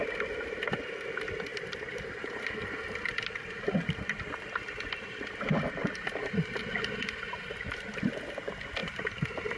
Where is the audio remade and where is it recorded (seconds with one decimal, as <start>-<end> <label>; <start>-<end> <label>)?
0.0-1.5 recorded; 1.5-6.6 remade; 6.6-8.8 recorded; 8.8-9.6 remade